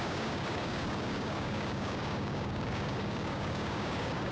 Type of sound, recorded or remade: remade